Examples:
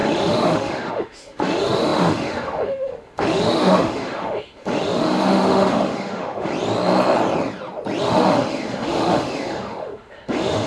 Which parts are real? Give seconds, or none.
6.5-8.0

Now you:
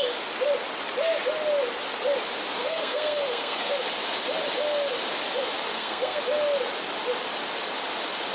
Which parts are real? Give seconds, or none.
0.0-2.6; 3.7-5.7; 6.2-8.3

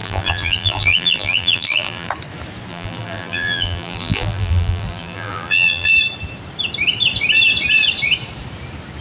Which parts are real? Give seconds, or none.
2.1-2.7; 5.9-9.0